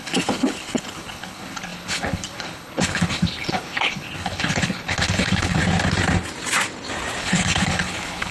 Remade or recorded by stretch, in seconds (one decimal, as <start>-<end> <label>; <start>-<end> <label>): 0.0-5.6 remade; 5.6-7.2 recorded; 7.2-8.3 remade